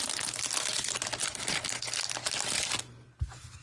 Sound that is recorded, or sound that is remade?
recorded